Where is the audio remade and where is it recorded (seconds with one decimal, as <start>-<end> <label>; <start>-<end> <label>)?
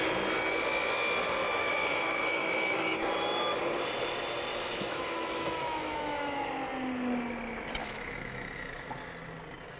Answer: 0.0-1.4 recorded; 1.4-3.6 remade; 3.6-4.5 recorded; 4.5-6.5 remade; 6.5-7.8 recorded; 7.8-8.9 remade; 8.9-9.8 recorded